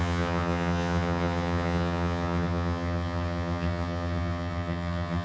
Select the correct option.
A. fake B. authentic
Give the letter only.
A